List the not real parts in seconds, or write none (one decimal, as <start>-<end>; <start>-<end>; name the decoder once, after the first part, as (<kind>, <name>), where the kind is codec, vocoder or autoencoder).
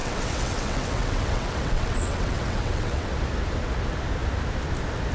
0.0-3.1 (vocoder, WaveNeXt)